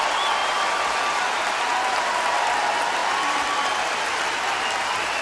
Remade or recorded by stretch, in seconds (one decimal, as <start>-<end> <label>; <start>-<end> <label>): 0.0-5.2 recorded

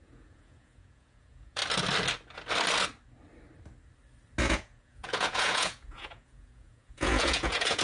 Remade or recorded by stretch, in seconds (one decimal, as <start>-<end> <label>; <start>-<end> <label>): 0.0-1.6 remade; 1.6-4.4 recorded; 4.4-7.8 remade

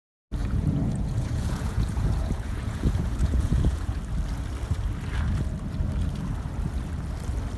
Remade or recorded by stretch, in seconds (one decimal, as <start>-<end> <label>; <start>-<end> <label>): 0.0-0.4 recorded; 0.4-4.0 remade; 4.0-7.6 recorded

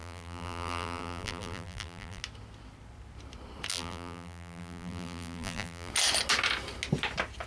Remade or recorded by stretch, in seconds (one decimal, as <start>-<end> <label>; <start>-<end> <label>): 0.0-2.2 remade; 2.2-3.7 recorded; 3.7-5.9 remade; 5.9-7.5 recorded

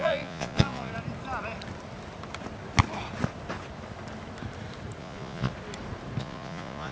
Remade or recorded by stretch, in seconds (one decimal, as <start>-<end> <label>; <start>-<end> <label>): 0.0-0.9 remade; 0.9-5.0 recorded; 5.0-5.5 remade; 5.5-6.2 recorded; 6.2-6.9 remade

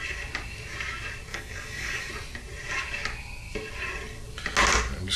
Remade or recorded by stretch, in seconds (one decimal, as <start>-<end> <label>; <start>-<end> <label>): 0.0-1.3 recorded; 1.3-2.1 remade; 2.1-5.2 recorded

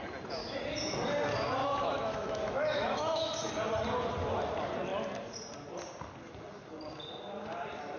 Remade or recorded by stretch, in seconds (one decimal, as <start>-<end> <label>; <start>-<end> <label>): 0.0-1.6 recorded; 1.6-3.5 remade; 3.5-8.0 recorded